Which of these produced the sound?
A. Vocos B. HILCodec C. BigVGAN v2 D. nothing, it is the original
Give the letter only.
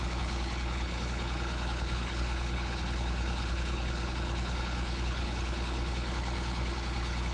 B